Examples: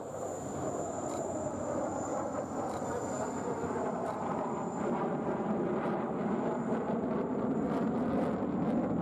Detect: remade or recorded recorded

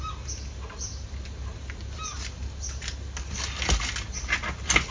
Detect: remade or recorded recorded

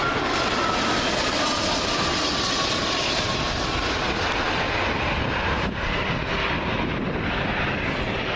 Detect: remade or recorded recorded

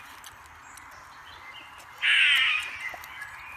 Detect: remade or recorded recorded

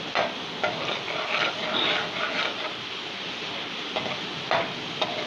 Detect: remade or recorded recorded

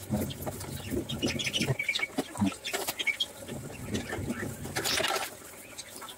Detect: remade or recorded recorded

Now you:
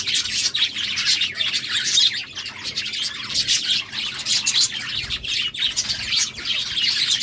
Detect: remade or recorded recorded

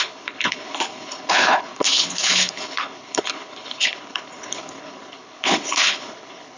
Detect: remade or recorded remade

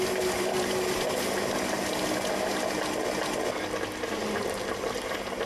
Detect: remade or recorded recorded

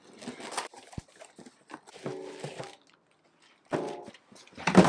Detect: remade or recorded recorded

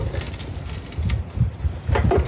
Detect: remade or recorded recorded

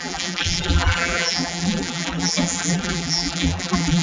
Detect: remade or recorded remade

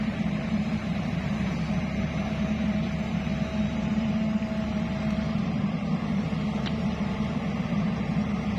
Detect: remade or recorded remade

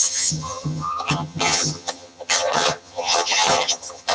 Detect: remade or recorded remade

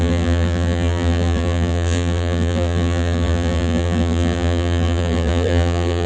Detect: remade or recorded remade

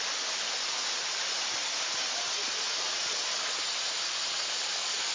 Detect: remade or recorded recorded